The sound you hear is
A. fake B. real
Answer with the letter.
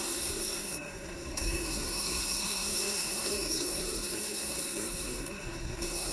A